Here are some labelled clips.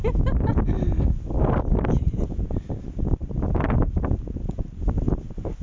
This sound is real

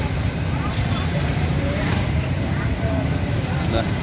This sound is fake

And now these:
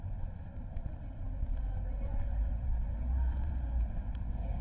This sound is fake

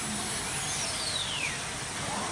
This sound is real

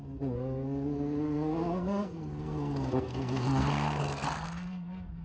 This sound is fake